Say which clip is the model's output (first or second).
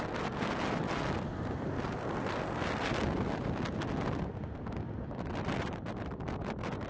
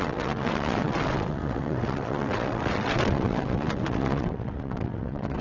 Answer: second